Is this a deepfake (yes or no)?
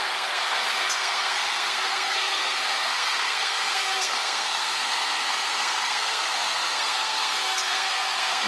yes